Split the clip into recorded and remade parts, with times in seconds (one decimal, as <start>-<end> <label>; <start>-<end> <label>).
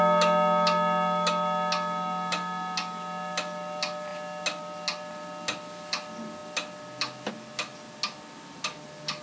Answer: 0.0-9.2 recorded